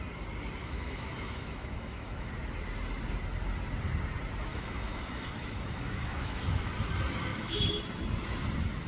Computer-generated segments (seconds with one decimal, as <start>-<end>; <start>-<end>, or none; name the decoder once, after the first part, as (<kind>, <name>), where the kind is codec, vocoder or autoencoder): 0.6-2.3 (autoencoder, DAC-VAE); 4.5-6.7; 7.3-7.8